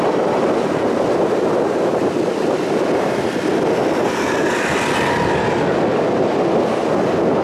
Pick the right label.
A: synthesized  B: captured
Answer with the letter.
B